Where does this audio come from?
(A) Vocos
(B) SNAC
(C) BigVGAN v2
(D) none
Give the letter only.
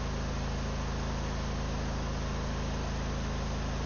D